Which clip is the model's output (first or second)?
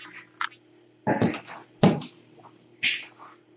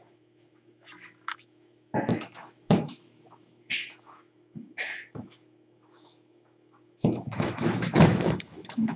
second